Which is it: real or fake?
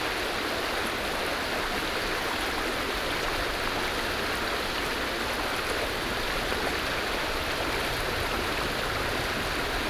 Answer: real